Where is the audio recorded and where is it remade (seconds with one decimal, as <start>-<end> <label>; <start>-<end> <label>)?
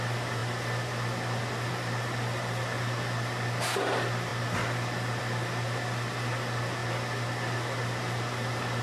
0.0-8.8 recorded